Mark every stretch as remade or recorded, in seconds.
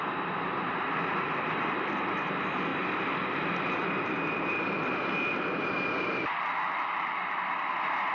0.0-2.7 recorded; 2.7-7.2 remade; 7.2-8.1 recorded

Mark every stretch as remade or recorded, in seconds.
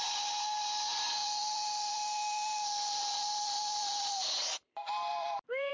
0.0-1.2 recorded; 1.2-4.3 remade; 4.3-5.1 recorded; 5.1-5.7 remade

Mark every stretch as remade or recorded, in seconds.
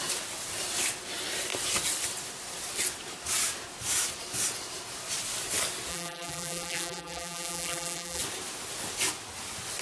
0.0-5.9 recorded; 5.9-8.2 remade; 8.2-9.8 recorded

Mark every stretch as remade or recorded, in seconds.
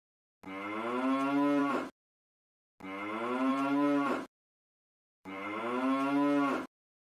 0.0-1.6 recorded; 1.6-2.5 remade; 2.5-3.5 recorded; 3.5-5.6 remade; 5.6-7.0 recorded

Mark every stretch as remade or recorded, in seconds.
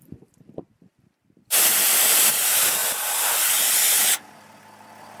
0.0-0.9 recorded; 0.9-2.3 remade; 2.3-2.8 recorded; 2.8-3.3 remade; 3.3-5.2 recorded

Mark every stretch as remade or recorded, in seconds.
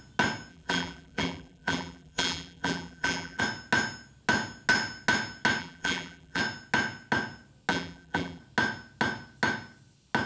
0.0-0.5 recorded; 0.5-3.4 remade; 3.4-5.6 recorded; 5.6-6.4 remade; 6.4-7.7 recorded; 7.7-8.4 remade; 8.4-10.3 recorded